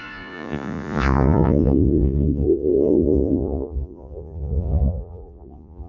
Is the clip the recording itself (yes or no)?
no